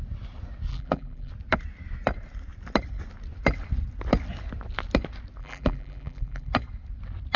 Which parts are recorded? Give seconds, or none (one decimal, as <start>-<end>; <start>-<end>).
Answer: 0.0-0.7; 1.3-5.4; 6.5-7.4